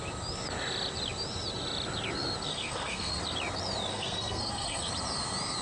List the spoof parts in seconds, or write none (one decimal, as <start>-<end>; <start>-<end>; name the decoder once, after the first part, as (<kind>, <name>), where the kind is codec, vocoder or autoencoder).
2.5-3.2 (codec, SNAC); 3.9-4.9